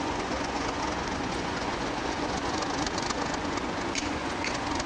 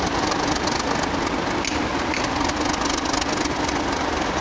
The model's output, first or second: first